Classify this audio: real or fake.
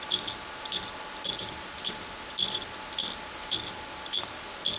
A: real